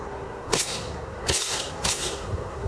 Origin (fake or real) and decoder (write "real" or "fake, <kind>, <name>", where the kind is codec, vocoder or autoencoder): fake, codec, SNAC